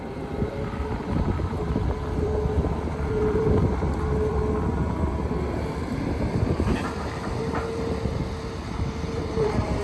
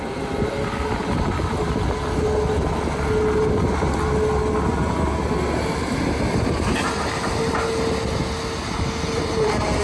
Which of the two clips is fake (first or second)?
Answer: first